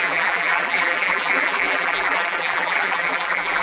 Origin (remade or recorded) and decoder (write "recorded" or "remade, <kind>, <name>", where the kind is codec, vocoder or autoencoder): remade, vocoder, BigVGAN v2